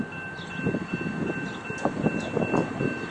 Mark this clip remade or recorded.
recorded